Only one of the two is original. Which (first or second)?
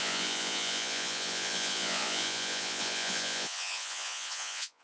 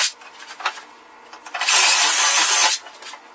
second